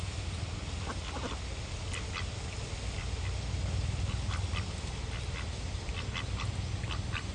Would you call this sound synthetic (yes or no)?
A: no